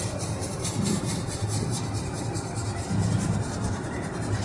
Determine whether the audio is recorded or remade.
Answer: remade